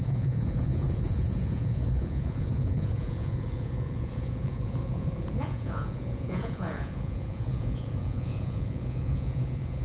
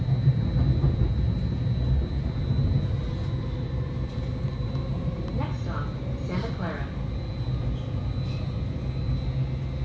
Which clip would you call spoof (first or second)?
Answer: first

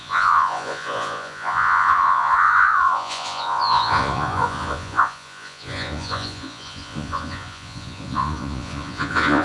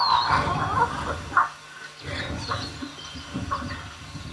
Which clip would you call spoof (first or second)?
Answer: first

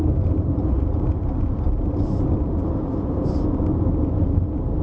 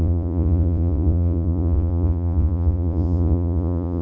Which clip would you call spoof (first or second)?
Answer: second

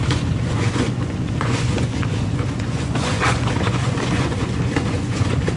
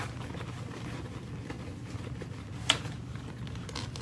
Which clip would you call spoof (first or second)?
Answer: first